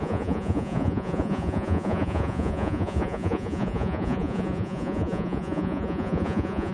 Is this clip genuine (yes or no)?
no